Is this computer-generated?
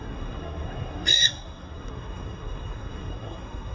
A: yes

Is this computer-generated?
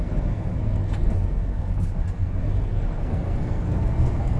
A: yes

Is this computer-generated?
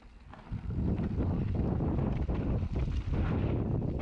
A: no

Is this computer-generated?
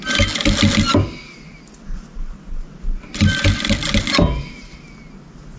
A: no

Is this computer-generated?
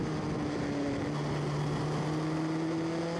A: no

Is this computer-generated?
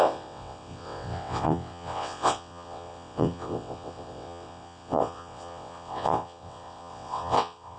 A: yes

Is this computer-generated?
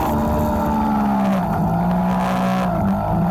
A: no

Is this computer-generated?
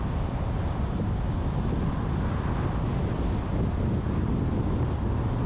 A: no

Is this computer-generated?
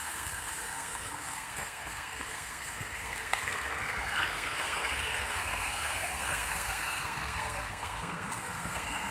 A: yes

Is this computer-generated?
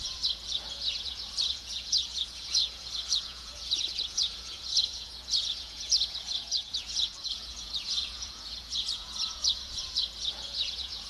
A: yes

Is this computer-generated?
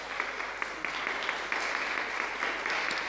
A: no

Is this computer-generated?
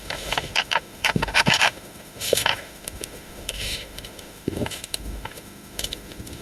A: yes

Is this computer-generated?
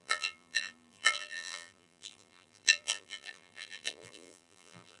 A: yes